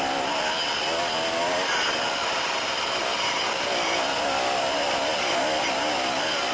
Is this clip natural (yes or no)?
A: yes